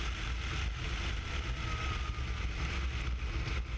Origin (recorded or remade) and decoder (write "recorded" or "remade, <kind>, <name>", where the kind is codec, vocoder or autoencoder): recorded